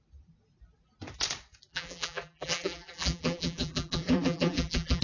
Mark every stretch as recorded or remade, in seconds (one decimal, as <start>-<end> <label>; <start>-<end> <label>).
0.0-1.7 recorded; 1.7-5.0 remade